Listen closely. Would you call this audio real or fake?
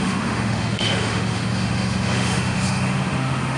fake